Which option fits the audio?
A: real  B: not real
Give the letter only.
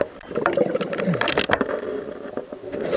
A